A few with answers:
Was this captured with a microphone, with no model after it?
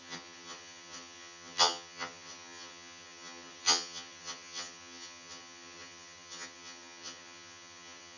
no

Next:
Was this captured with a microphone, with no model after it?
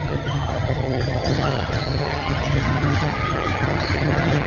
no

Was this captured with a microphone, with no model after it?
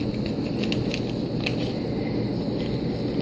yes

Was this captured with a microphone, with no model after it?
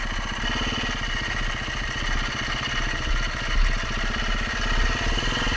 yes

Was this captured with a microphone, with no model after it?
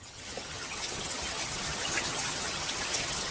no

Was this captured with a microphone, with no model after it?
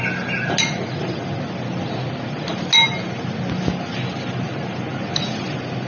yes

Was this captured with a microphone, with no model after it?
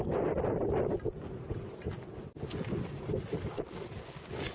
yes